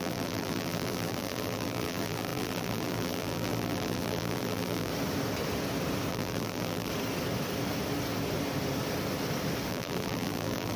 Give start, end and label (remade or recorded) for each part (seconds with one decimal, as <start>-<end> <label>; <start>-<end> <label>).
0.0-4.9 remade; 4.9-6.1 recorded; 6.1-6.9 remade; 6.9-9.7 recorded; 9.7-10.8 remade